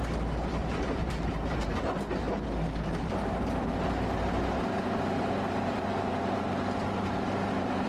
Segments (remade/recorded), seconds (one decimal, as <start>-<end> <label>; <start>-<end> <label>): 0.0-0.4 recorded; 0.4-1.8 remade; 1.8-3.0 recorded; 3.0-7.9 remade